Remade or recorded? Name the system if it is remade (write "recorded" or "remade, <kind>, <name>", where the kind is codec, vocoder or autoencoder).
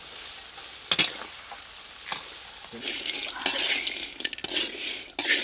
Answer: recorded